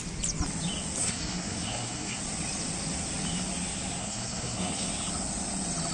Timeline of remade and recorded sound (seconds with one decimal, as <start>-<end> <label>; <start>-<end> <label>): 0.0-1.0 recorded; 1.0-2.2 remade; 2.2-4.0 recorded; 4.0-4.9 remade; 4.9-5.9 recorded